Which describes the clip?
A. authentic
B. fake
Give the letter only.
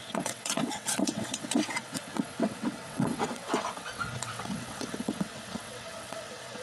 B